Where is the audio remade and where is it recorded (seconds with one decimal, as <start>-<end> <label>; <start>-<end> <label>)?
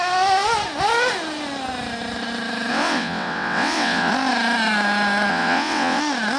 0.0-2.7 recorded; 2.7-4.1 remade; 4.1-5.3 recorded; 5.3-6.0 remade; 6.0-6.4 recorded